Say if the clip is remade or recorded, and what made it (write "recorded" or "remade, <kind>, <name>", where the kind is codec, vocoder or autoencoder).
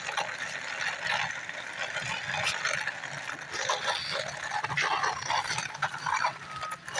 recorded